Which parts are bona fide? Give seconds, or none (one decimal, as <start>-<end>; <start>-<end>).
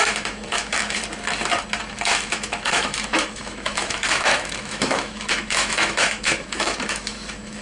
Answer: 1.0-1.9